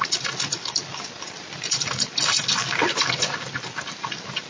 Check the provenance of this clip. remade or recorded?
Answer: recorded